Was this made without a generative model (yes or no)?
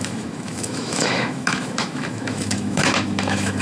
no